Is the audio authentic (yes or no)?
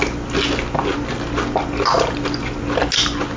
yes